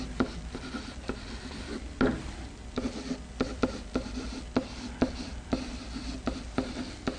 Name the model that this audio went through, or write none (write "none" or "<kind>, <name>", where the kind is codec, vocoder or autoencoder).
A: none